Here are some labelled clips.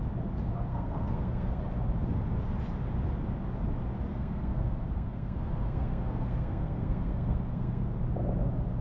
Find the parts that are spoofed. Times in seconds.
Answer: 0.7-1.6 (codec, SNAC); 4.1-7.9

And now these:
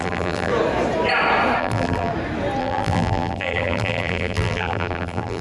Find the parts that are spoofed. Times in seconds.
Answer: 0.0-0.5 (vocoder, BigVGAN v2); 1.6-2.1; 2.6-5.4

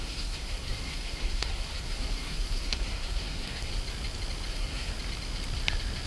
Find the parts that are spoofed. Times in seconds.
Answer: 0.0-3.7 (codec, SNAC); 4.5-4.9

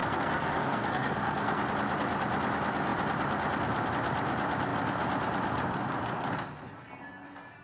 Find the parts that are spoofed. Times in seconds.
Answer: 0.0-1.6 (codec, SNAC)